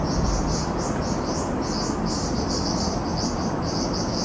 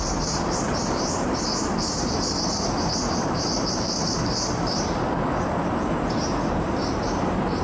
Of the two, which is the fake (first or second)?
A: second